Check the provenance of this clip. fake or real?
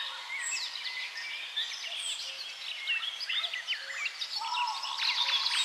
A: real